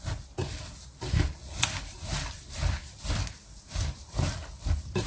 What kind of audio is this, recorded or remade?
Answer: remade